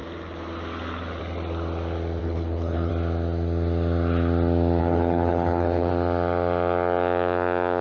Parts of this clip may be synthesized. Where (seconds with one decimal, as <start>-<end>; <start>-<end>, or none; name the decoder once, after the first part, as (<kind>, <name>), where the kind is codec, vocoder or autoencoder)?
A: 2.2-2.9 (codec, HILCodec); 4.8-5.9